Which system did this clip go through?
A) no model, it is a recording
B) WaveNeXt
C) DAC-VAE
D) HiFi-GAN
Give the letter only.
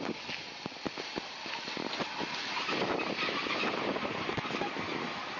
A